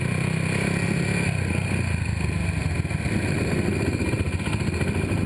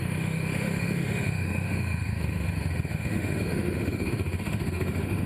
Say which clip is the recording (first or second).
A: first